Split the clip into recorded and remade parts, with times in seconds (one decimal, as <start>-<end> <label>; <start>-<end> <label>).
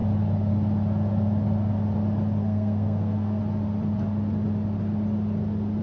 0.0-2.4 recorded; 2.4-3.4 remade; 3.4-5.8 recorded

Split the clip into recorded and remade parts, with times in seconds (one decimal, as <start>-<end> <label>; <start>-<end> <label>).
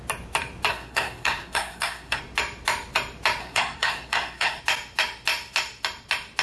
0.0-0.7 recorded; 0.7-2.2 remade; 2.2-3.4 recorded; 3.4-4.6 remade; 4.6-6.4 recorded